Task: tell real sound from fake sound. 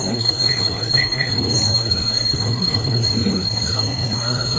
fake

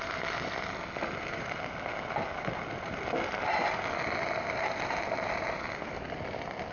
real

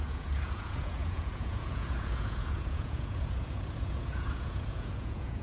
fake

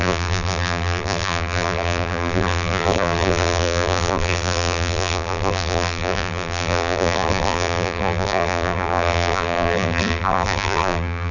fake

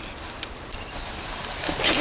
real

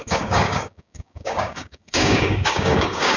fake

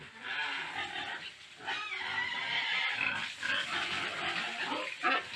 real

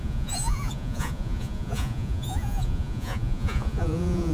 fake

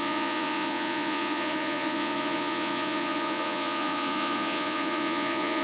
fake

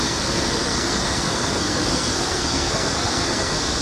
fake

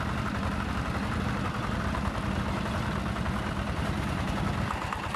real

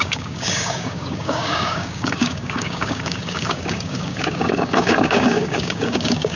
fake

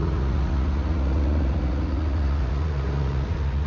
fake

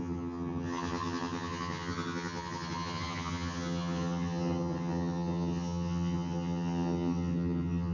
fake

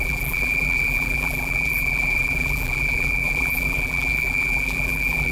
fake